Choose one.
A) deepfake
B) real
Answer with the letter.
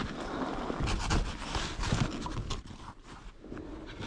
B